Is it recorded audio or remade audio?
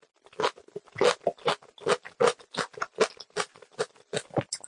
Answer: recorded